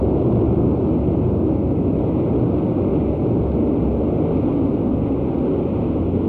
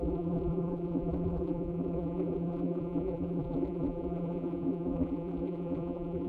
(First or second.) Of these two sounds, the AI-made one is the second